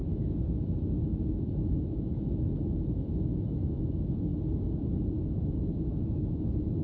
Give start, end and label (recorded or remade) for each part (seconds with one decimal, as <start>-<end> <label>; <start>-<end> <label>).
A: 0.0-4.3 remade; 4.3-5.3 recorded; 5.3-6.8 remade